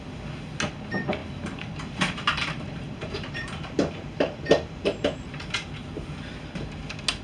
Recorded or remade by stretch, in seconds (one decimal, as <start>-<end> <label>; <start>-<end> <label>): 0.0-1.2 recorded; 1.2-5.5 remade; 5.5-7.2 recorded